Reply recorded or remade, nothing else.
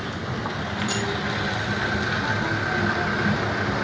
recorded